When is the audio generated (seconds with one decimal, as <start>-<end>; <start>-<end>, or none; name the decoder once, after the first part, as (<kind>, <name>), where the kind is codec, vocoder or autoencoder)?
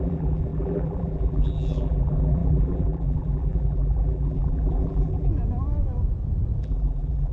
0.0-5.3 (vocoder, BigVGAN v2); 6.6-7.3